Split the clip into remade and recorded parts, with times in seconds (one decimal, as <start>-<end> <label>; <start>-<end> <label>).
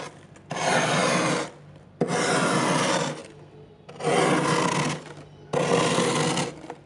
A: 0.0-6.9 recorded